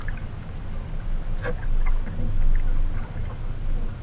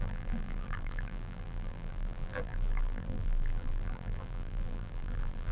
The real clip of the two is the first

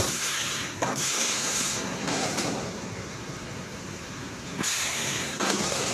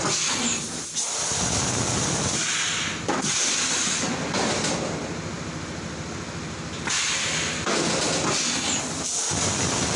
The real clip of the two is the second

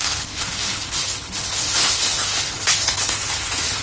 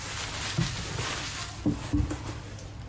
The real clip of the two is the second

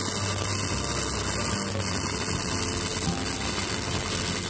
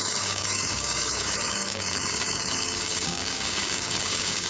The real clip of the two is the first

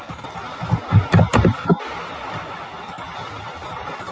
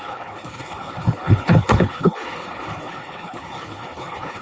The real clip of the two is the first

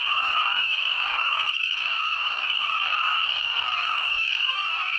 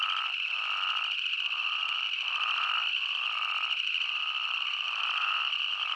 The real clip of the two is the second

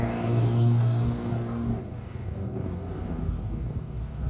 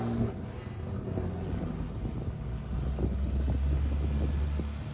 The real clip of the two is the second